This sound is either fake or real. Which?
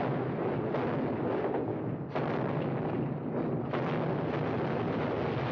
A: real